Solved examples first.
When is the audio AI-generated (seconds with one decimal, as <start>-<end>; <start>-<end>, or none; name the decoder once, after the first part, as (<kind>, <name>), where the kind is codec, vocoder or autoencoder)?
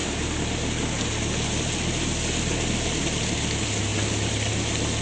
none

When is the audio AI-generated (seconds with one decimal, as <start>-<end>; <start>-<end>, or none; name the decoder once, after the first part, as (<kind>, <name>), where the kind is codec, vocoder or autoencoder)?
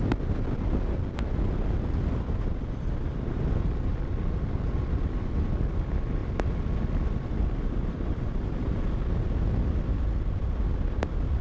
none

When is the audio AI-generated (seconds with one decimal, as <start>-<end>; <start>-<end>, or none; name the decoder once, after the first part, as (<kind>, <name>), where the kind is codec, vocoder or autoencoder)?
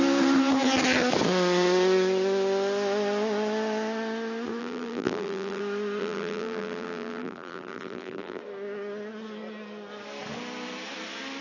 4.6-5.6 (vocoder, BigVGAN v2); 6.0-8.4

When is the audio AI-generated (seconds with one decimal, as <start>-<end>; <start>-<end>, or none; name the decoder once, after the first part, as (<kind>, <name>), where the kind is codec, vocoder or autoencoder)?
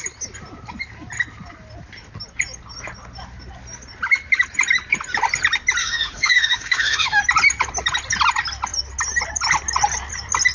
5.8-7.2 (autoencoder, DAC-VAE)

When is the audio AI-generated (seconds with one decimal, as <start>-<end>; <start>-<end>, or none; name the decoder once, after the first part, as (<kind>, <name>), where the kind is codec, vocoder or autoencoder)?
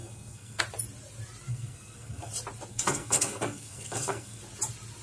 0.0-0.6 (codec, SNAC); 1.5-2.3; 2.7-4.4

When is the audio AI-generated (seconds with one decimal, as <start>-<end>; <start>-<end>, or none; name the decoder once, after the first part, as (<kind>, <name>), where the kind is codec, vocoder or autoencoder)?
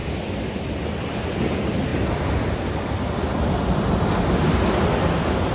none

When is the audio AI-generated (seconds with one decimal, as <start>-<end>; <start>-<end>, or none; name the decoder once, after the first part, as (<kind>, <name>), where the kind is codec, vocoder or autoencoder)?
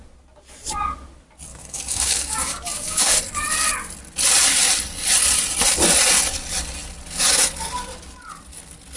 1.5-3.2 (codec, DAC)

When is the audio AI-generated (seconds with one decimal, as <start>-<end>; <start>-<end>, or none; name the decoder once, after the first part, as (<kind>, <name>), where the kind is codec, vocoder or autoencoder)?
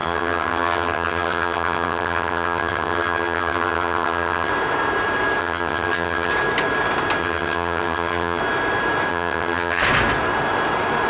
0.0-4.5 (vocoder, HiFi-GAN); 5.4-6.3; 7.2-8.4; 9.1-9.8